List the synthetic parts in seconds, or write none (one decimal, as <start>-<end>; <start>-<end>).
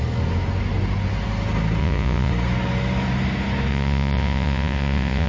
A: 1.8-2.3; 3.7-5.3